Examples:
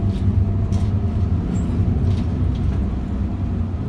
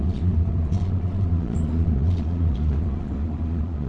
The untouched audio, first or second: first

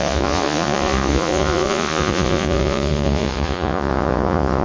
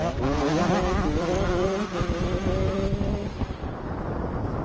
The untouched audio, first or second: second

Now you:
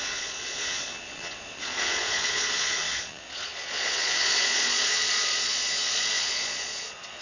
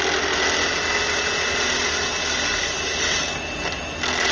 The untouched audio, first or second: second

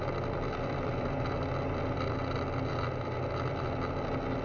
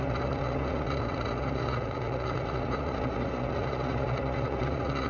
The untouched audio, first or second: first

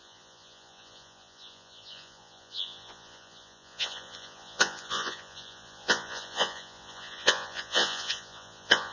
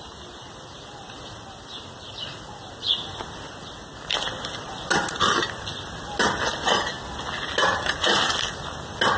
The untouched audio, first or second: second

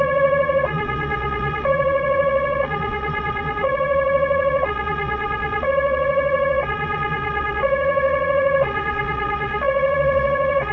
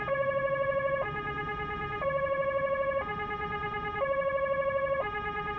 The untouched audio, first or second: second